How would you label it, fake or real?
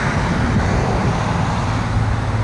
real